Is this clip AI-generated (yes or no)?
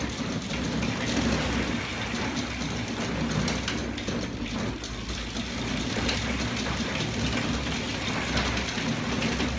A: no